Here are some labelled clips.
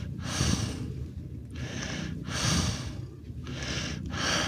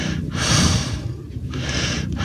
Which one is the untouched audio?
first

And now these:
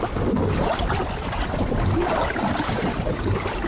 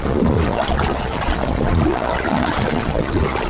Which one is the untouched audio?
first